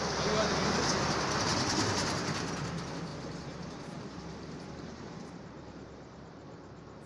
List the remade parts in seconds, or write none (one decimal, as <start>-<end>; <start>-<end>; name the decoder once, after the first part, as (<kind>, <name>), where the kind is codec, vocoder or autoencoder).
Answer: 1.5-2.3 (vocoder, BigVGAN v2); 3.1-7.1

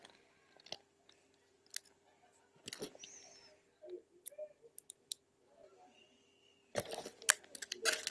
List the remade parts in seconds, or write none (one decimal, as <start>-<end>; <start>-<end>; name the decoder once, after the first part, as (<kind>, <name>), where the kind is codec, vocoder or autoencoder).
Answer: none

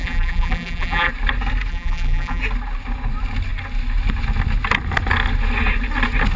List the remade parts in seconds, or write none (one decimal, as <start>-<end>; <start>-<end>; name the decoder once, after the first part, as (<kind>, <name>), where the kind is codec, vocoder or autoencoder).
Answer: 0.0-1.1 (vocoder, BigVGAN v2); 1.7-2.4

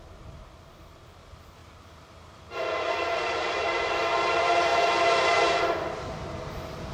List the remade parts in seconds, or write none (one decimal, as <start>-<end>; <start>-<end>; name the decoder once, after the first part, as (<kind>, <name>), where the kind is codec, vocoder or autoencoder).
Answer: none

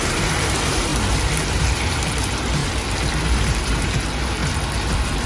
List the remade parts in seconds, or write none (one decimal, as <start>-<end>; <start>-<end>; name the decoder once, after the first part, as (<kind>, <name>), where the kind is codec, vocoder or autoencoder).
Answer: 0.0-0.9 (vocoder, BigVGAN v2); 1.6-2.6; 3.2-4.4

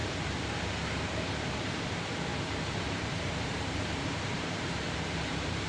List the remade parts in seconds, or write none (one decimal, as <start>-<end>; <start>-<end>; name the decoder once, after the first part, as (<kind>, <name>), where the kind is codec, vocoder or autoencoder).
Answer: 0.0-1.8 (vocoder, BigVGAN v2); 2.3-5.7